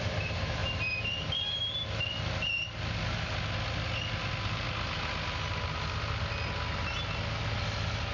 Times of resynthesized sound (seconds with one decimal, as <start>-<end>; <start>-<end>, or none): none

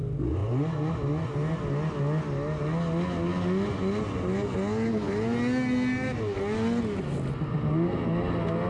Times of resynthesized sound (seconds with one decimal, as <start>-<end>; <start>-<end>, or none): 0.4-0.9